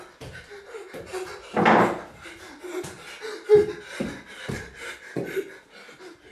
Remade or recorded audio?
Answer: recorded